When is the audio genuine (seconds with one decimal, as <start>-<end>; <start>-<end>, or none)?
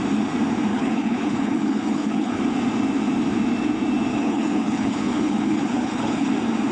0.0-0.7; 2.4-4.1; 6.3-6.7